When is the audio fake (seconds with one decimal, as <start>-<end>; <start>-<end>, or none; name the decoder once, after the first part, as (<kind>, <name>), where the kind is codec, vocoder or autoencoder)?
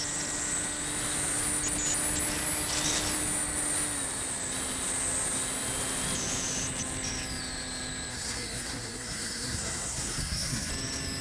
8.1-10.7 (codec, SNAC)